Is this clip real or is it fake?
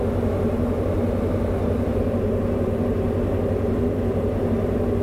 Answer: real